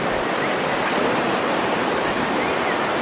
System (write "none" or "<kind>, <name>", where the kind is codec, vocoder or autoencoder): none